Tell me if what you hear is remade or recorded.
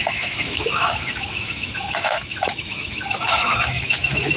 remade